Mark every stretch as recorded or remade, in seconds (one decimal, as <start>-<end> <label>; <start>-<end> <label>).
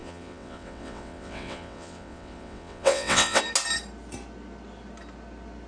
0.0-3.4 remade; 3.4-5.7 recorded